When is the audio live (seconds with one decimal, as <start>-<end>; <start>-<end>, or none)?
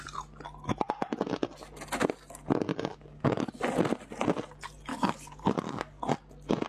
0.0-2.7; 3.5-4.9; 6.0-6.7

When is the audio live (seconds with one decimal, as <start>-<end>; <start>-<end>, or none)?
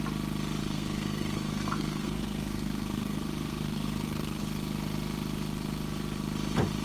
0.0-0.6; 4.4-6.8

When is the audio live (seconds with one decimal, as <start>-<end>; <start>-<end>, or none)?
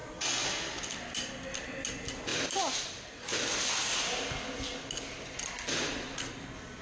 0.0-6.8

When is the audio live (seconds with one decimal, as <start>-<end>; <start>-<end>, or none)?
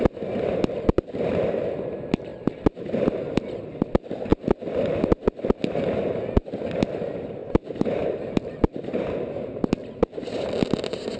0.0-11.2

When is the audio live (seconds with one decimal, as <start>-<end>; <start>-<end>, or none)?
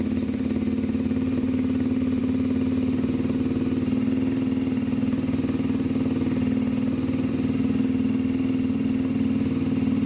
0.0-10.1